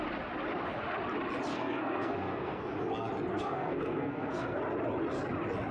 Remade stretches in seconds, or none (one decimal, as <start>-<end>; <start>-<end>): 1.5-2.6; 3.3-4.6